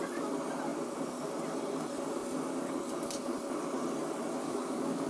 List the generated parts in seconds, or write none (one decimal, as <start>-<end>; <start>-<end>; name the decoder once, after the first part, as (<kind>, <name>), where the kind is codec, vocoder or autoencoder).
4.4-5.1 (codec, DAC)